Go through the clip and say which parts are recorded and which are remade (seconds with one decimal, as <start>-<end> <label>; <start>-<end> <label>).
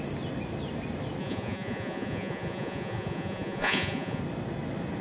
0.0-1.2 recorded; 1.2-4.2 remade; 4.2-5.0 recorded